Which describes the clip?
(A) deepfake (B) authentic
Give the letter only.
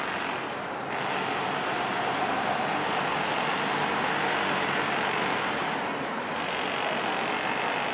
B